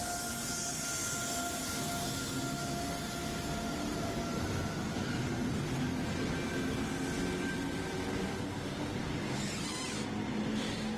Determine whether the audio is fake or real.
real